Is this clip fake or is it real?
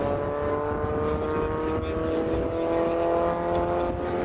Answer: real